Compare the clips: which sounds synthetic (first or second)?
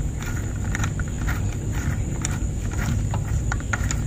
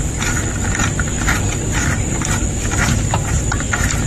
second